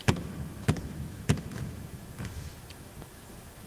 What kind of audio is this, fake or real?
fake